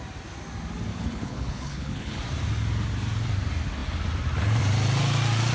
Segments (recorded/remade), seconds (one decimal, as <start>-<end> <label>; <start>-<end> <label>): 0.0-0.9 recorded; 0.9-2.2 remade; 2.2-5.5 recorded